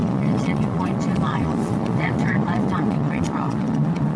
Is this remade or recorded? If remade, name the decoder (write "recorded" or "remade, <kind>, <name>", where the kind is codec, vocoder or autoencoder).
remade, vocoder, Vocos